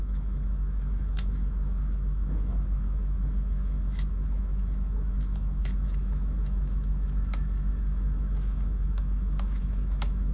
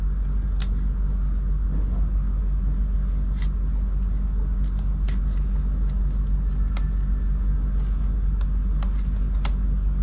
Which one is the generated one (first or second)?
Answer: first